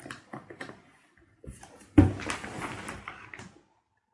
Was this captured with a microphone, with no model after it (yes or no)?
yes